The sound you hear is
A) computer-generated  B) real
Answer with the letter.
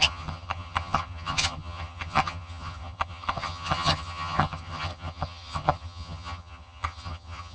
A